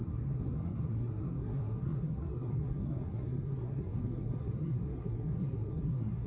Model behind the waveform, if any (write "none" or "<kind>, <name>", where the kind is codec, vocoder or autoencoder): codec, SNAC